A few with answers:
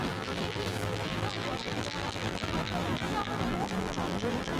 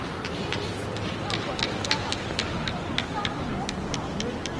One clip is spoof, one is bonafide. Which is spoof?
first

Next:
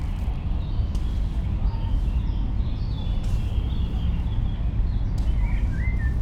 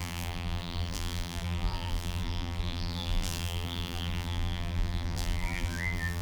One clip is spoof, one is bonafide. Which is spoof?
second